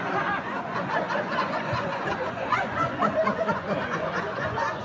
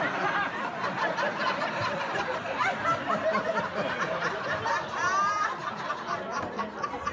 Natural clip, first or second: second